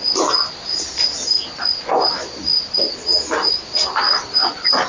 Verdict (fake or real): real